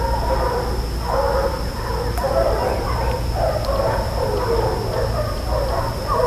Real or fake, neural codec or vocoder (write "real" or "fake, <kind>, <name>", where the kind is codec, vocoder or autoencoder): real